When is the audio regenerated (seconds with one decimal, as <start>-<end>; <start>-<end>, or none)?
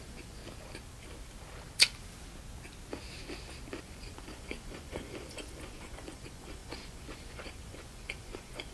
0.0-0.4; 3.8-8.7